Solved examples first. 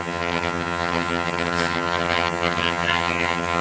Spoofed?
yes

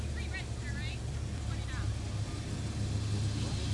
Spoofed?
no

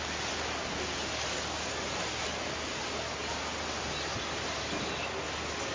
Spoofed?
no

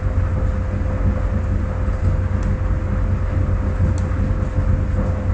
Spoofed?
no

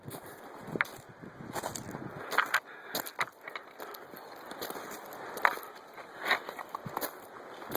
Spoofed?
no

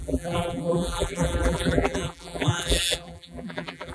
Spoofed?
yes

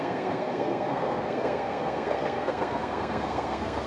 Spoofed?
yes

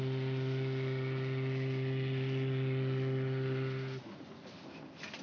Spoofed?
no